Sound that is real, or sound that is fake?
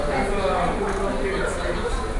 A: real